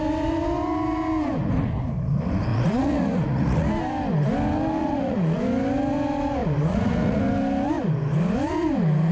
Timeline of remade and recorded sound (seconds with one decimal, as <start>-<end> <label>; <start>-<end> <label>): 0.0-2.5 recorded; 2.5-3.7 remade; 3.7-4.8 recorded; 4.8-5.4 remade; 5.4-6.4 recorded; 6.4-7.2 remade; 7.2-9.1 recorded